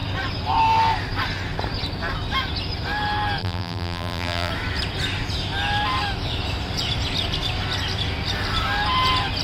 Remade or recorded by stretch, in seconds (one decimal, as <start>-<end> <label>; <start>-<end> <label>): 0.0-3.4 recorded; 3.4-4.5 remade; 4.5-9.4 recorded

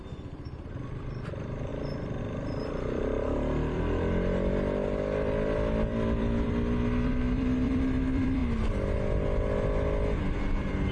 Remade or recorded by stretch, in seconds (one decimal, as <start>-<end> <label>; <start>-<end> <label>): 0.0-1.7 remade; 1.7-2.2 recorded; 2.2-8.4 remade; 8.4-10.3 recorded; 10.3-10.9 remade

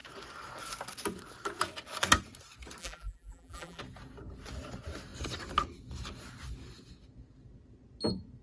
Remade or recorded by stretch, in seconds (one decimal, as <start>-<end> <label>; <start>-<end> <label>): 0.0-2.8 recorded; 2.8-3.8 remade; 3.8-8.4 recorded

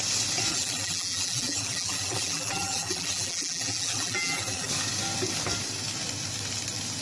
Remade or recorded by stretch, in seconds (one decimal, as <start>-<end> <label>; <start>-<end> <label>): 0.0-0.5 recorded; 0.5-4.7 remade; 4.7-7.0 recorded

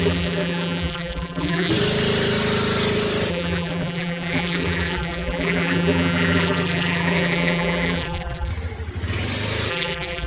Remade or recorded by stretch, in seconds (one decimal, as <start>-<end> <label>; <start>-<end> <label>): 0.0-1.7 remade; 1.7-3.3 recorded; 3.3-8.5 remade; 8.5-9.7 recorded; 9.7-10.3 remade

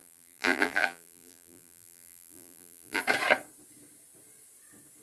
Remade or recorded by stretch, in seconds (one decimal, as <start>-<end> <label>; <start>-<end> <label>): 0.0-3.0 remade; 3.0-5.0 recorded

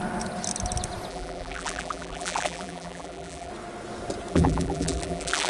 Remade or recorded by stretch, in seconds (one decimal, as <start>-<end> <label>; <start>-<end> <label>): 0.0-1.1 recorded; 1.1-3.5 remade; 3.5-4.3 recorded; 4.3-5.5 remade